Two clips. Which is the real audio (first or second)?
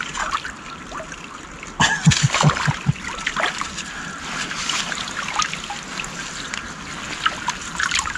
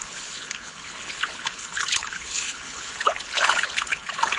first